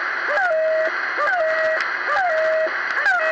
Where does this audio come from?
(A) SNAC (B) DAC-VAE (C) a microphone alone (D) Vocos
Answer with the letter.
C